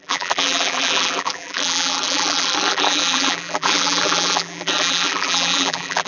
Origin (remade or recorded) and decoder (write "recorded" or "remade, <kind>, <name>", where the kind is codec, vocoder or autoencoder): remade, vocoder, BigVGAN v2